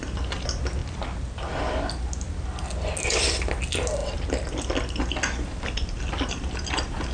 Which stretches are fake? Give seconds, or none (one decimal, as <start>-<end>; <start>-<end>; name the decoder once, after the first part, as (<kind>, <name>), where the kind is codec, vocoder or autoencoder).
none